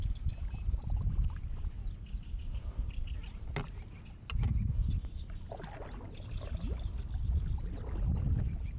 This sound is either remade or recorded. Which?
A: recorded